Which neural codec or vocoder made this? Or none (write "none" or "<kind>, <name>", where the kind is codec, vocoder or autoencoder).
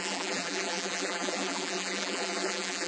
vocoder, BigVGAN v2